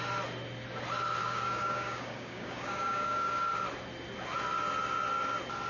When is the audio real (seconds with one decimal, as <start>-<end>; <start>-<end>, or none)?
0.0-1.2; 3.5-5.7